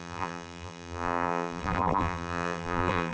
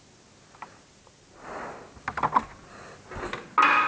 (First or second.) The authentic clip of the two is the second